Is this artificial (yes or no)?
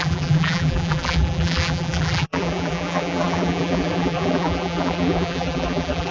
yes